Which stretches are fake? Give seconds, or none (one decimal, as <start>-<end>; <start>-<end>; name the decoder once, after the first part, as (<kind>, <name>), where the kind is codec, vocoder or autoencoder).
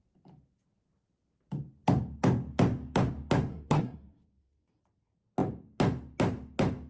3.5-4.8 (codec, SNAC)